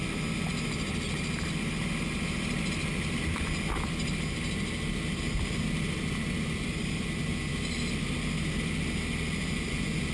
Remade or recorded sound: recorded